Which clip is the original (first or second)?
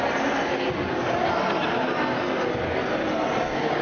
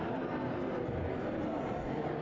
first